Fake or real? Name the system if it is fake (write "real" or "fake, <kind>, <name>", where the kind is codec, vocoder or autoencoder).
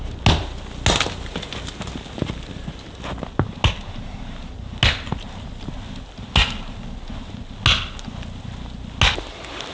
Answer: real